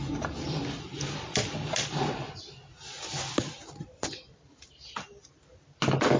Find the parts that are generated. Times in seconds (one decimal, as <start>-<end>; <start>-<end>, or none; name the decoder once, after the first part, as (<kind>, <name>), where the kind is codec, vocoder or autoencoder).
none